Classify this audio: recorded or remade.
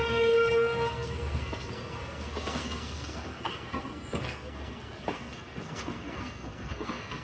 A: remade